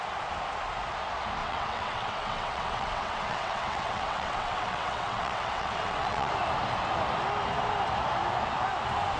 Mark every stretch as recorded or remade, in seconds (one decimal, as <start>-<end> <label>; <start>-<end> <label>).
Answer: 0.0-1.4 recorded; 1.4-6.3 remade; 6.3-9.2 recorded